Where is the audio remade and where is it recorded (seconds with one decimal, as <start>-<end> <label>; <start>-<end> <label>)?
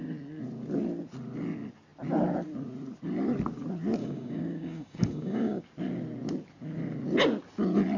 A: 0.0-4.0 recorded; 4.0-5.6 remade; 5.6-8.0 recorded